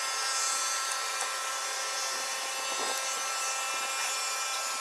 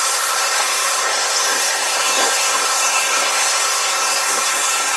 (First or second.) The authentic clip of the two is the first